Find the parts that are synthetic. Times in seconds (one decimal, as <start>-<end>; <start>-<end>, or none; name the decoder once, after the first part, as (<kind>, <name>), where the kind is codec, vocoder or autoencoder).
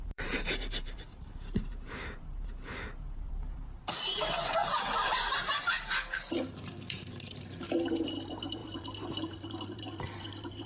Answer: 0.0-10.7 (vocoder, BigVGAN v2)